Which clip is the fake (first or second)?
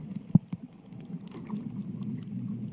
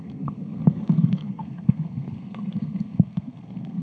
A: second